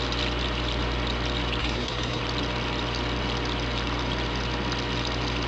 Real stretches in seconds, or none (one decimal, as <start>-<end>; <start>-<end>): 0.0-1.6; 2.2-5.5